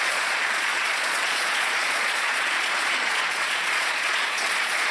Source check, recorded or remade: remade